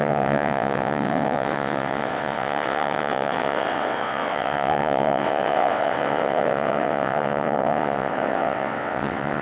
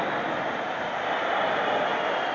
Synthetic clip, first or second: first